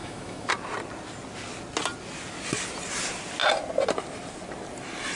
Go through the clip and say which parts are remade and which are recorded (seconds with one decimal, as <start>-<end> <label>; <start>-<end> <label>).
0.0-0.5 remade; 0.5-5.2 recorded